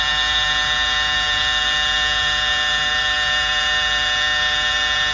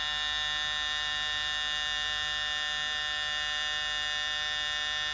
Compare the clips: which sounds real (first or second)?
second